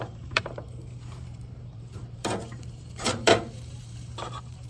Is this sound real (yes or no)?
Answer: no